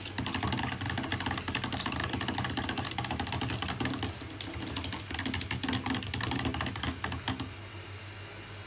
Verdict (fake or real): real